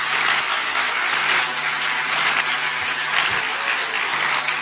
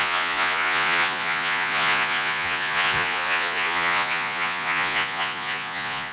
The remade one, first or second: second